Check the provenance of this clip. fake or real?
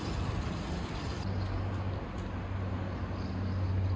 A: real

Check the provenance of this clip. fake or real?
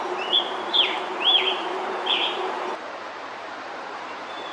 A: fake